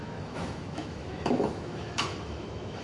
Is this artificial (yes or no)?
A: yes